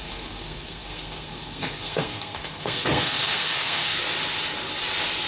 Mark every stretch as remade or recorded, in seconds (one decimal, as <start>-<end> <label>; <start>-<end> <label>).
0.0-4.0 remade; 4.0-5.3 recorded